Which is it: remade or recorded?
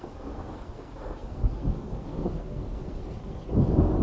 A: remade